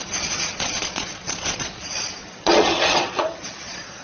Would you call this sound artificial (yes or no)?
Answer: yes